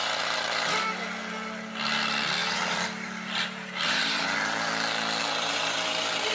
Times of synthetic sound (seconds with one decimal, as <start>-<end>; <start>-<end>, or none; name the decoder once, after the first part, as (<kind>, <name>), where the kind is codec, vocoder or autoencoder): 0.0-0.9 (vocoder, BigVGAN v2); 2.4-4.7; 5.2-6.3